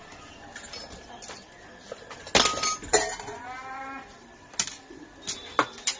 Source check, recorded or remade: recorded